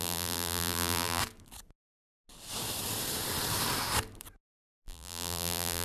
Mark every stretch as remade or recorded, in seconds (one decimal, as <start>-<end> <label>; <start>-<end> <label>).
0.0-1.2 remade; 1.2-4.7 recorded; 4.7-5.8 remade